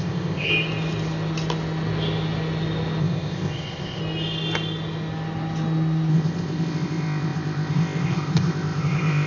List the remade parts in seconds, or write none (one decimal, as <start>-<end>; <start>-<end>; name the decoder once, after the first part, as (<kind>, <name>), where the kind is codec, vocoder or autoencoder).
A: 0.0-0.5 (codec, ZipCodec); 3.0-4.0; 6.1-9.3